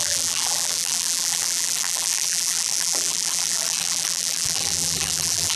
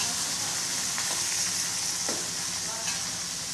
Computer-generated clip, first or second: first